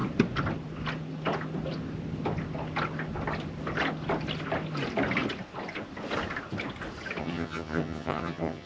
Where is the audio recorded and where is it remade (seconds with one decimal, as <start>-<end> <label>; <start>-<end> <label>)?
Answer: 0.0-7.2 recorded; 7.2-8.7 remade